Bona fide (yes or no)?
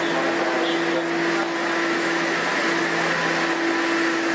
yes